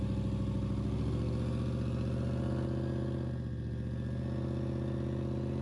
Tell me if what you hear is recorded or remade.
recorded